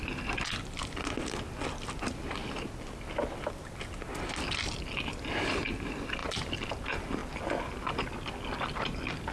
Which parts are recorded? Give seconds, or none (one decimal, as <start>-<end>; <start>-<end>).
0.0-9.3